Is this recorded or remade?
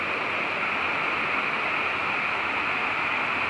recorded